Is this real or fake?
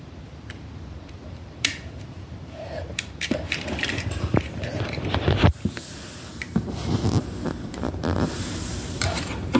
fake